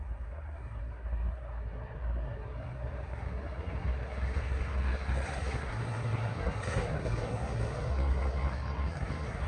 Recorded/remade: remade